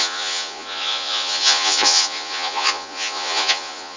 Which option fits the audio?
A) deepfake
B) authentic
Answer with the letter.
A